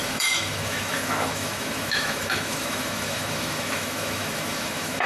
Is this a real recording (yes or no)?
no